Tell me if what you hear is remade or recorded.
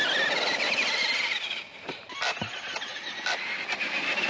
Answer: recorded